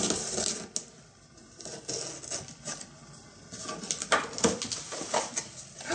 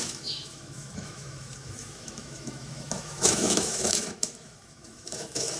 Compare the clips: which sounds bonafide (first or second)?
first